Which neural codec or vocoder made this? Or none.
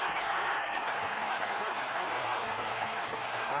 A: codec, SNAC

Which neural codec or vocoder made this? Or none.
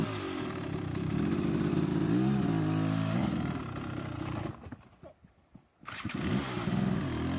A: none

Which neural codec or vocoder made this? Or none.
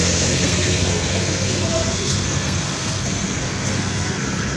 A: codec, SNAC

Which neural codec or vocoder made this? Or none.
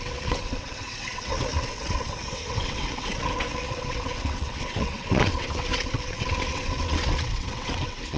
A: vocoder, WaveNeXt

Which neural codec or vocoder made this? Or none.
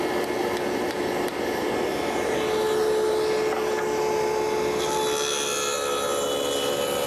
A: none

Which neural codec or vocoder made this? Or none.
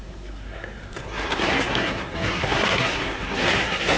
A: codec, SNAC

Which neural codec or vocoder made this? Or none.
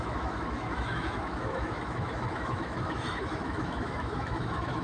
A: autoencoder, DAC-VAE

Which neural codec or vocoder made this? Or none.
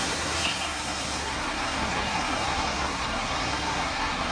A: codec, SNAC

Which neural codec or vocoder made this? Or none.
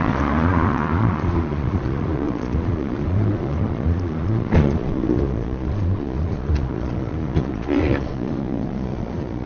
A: vocoder, Vocos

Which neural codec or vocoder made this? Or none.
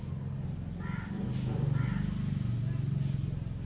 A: none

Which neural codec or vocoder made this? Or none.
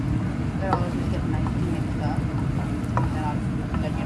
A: none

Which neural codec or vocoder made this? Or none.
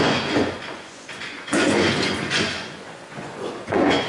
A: vocoder, Vocos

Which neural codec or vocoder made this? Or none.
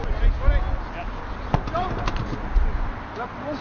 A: none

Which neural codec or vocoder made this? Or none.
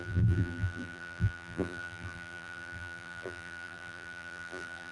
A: vocoder, BigVGAN v2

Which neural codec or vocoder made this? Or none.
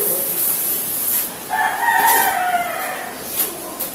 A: none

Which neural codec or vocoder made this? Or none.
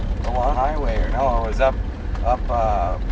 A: none